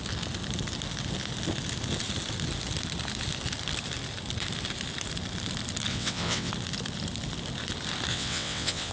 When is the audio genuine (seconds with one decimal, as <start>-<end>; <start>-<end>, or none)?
0.0-5.9; 6.5-8.1